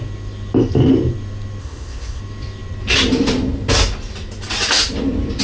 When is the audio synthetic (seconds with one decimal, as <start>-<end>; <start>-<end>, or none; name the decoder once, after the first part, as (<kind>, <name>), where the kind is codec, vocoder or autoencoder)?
1.6-2.2 (codec, ZipCodec)